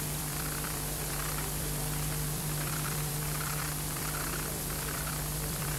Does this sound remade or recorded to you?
remade